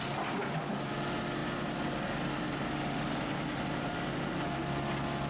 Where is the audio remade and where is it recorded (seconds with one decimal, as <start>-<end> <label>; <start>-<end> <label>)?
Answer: 0.0-5.3 recorded